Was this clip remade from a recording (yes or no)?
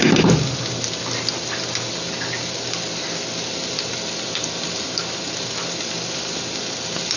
no